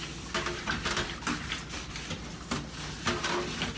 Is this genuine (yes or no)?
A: yes